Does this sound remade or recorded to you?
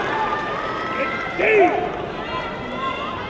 recorded